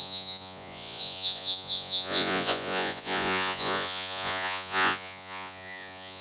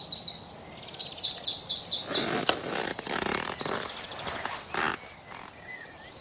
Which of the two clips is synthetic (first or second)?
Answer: first